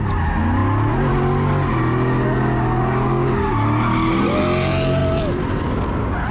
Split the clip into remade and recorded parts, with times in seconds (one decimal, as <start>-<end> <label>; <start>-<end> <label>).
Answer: 0.0-5.0 recorded; 5.0-5.6 remade; 5.6-6.3 recorded